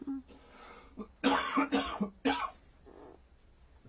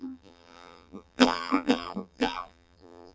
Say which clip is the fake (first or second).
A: second